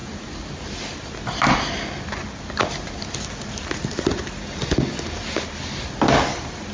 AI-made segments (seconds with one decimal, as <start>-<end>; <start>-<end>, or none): none